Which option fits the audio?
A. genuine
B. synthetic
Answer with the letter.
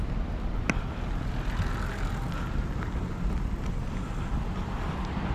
A